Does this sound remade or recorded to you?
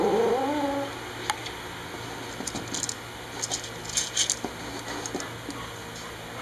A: recorded